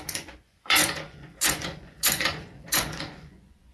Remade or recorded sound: remade